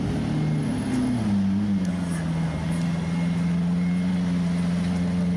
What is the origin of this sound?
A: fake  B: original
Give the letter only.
B